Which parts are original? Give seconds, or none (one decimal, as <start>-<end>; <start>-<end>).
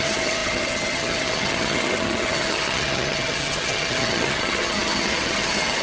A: none